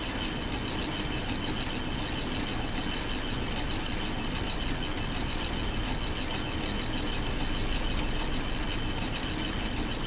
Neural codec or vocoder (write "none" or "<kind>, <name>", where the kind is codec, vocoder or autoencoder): none